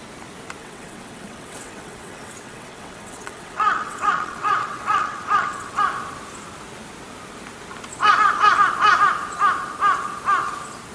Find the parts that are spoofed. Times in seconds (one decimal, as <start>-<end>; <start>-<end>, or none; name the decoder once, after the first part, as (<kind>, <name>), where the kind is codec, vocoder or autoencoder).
0.6-5.8 (vocoder, WaveNeXt)

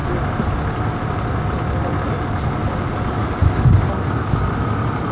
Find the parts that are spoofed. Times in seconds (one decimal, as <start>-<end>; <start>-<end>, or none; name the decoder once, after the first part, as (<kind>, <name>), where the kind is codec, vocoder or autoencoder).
none